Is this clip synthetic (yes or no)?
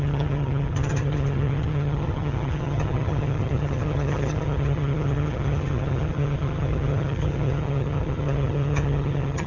yes